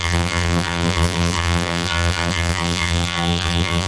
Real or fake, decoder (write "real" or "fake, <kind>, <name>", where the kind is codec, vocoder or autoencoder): fake, vocoder, BigVGAN v2